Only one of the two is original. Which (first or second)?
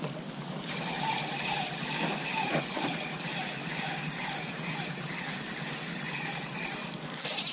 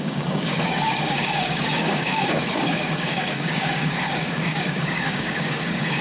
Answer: first